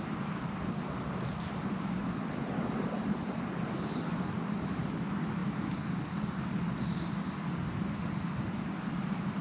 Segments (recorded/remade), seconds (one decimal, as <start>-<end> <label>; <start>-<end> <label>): 0.0-9.4 recorded